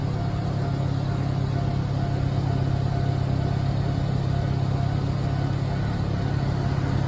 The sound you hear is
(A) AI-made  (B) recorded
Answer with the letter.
B